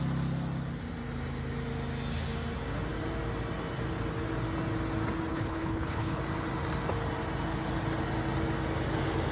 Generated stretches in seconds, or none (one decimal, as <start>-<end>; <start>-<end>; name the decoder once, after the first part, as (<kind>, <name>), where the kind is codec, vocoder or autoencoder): 5.3-6.2 (codec, HILCodec)